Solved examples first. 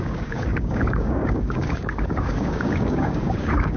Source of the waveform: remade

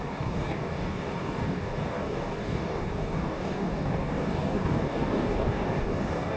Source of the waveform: remade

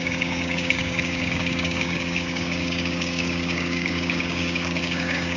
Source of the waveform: remade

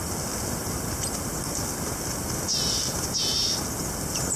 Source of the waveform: recorded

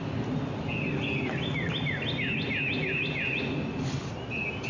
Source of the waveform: recorded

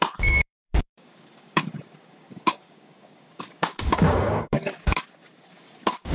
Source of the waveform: remade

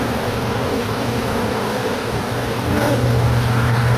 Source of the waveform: remade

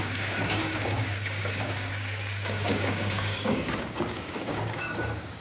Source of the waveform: remade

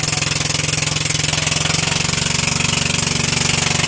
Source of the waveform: recorded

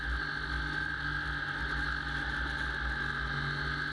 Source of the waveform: recorded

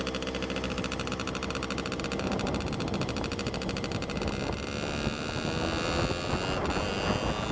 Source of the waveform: recorded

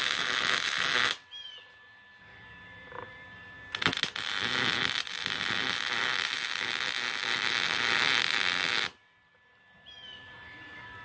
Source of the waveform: recorded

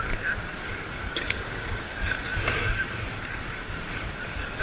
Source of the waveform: remade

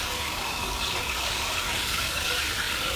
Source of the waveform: remade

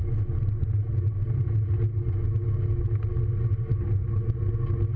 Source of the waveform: recorded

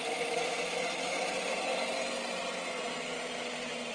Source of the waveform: recorded